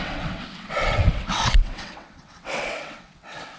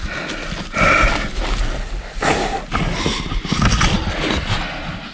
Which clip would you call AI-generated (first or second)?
first